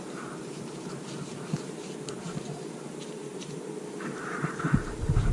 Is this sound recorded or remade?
remade